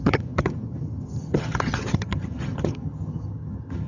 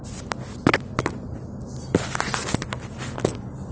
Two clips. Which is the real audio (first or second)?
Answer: second